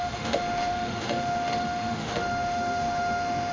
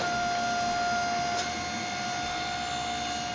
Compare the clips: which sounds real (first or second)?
second